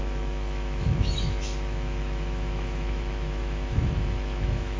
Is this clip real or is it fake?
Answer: fake